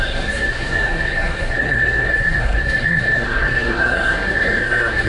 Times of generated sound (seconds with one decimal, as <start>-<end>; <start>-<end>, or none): 0.0-5.1